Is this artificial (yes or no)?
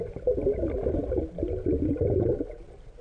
no